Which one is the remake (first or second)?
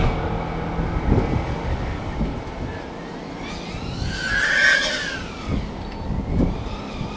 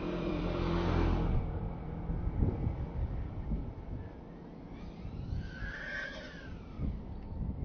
second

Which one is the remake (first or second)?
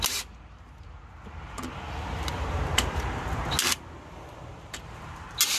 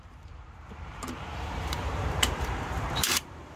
second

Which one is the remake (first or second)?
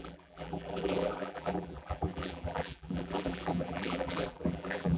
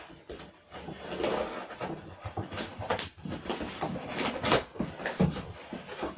first